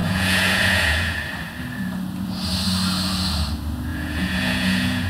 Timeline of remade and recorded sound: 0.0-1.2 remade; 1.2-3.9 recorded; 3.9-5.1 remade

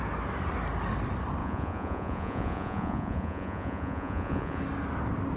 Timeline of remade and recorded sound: 0.0-1.4 recorded; 1.4-4.6 remade; 4.6-5.4 recorded

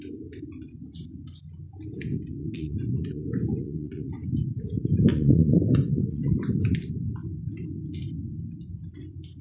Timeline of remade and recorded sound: 0.0-2.4 recorded; 2.4-4.1 remade; 4.1-5.1 recorded; 5.1-6.3 remade; 6.3-9.4 recorded

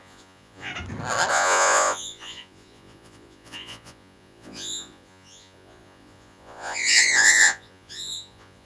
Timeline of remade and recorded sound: 0.0-0.7 remade; 0.7-1.3 recorded; 1.3-8.7 remade

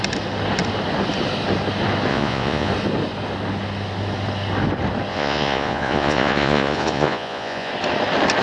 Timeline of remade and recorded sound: 0.0-2.1 recorded; 2.1-2.7 remade; 2.7-5.1 recorded; 5.1-7.7 remade; 7.7-8.4 recorded